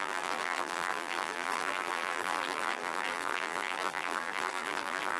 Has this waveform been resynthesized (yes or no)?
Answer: yes